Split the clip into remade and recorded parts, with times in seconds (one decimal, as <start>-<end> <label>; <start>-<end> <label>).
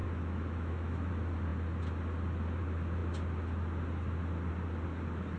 0.0-1.1 remade; 1.1-5.4 recorded